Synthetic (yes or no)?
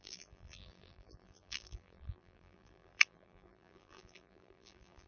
yes